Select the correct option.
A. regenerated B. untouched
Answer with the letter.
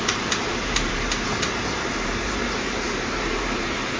A